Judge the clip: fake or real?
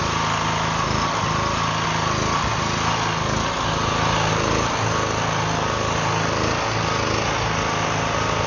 real